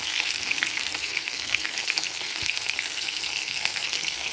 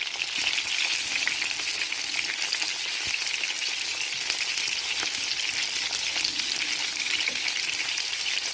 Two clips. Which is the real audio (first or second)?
second